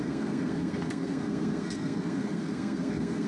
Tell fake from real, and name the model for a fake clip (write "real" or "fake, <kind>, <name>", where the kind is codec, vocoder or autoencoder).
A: fake, codec, SNAC